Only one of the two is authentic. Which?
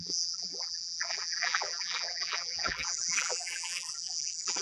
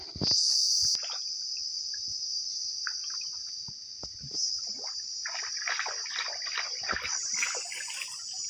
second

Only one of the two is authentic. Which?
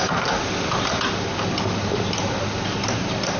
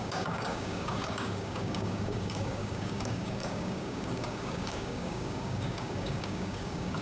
first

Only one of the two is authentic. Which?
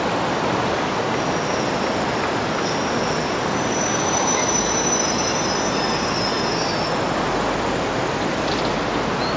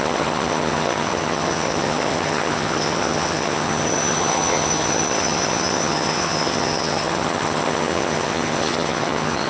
first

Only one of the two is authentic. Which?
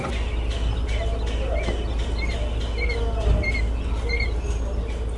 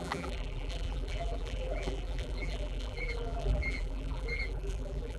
first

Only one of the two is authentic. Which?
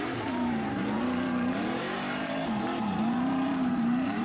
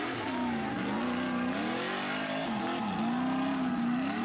second